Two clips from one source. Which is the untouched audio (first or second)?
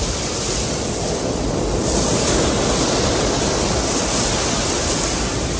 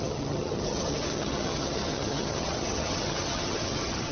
first